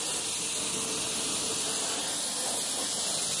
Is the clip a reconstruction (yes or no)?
no